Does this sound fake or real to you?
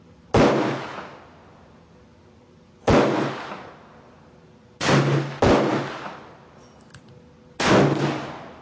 real